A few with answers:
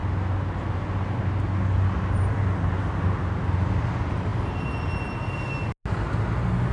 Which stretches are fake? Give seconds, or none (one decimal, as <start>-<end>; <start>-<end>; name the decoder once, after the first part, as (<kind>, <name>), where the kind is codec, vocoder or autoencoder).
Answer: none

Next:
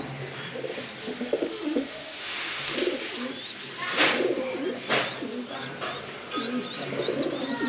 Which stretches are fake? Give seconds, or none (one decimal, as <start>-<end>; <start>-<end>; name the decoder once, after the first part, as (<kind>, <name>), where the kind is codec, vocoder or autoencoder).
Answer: 1.0-2.7 (autoencoder, DAC-VAE)

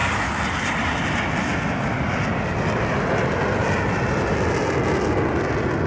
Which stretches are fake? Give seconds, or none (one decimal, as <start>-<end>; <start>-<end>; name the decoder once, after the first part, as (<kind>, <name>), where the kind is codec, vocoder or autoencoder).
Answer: none

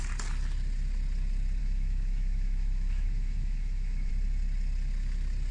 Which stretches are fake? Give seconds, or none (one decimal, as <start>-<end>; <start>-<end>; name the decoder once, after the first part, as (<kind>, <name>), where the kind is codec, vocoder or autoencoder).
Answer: 1.6-4.1 (autoencoder, DAC-VAE)